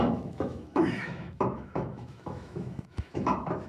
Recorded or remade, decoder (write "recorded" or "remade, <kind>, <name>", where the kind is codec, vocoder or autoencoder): remade, autoencoder, DAC-VAE